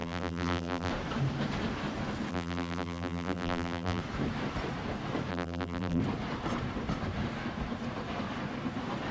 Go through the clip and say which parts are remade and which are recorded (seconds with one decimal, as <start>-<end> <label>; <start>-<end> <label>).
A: 0.0-0.9 remade; 0.9-2.3 recorded; 2.3-4.0 remade; 4.0-5.3 recorded; 5.3-6.0 remade; 6.0-9.1 recorded